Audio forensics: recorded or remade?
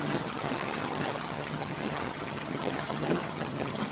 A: remade